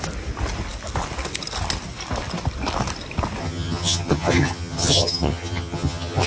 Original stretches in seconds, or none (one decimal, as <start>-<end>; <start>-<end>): 0.0-3.4